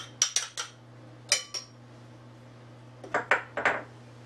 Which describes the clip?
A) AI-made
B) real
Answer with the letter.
B